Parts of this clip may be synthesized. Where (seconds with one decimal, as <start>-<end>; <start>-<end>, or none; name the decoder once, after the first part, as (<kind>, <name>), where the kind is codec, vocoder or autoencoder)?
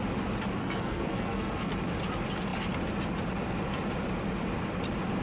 0.6-1.7 (codec, SNAC)